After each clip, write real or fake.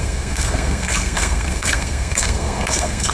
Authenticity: fake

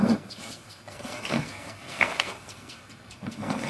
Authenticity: fake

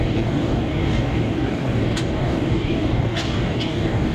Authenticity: fake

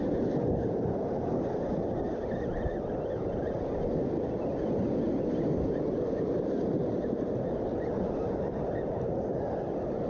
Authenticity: real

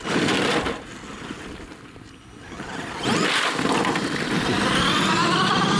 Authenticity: real